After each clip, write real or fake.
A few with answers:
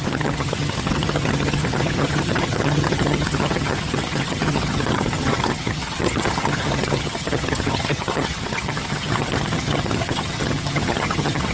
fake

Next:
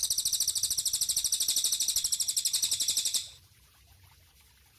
fake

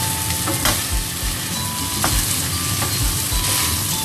real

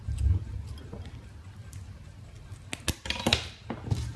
real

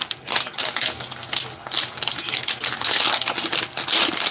real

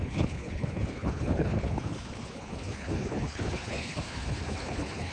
fake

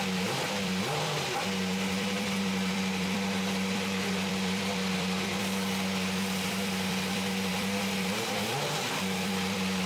fake